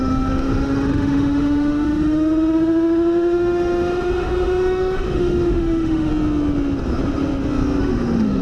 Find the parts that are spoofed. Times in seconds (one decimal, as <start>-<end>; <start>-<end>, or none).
0.0-6.1; 7.8-8.4